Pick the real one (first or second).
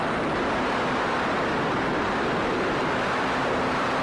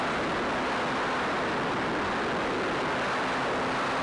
second